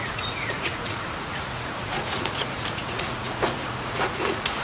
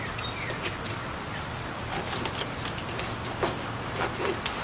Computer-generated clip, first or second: first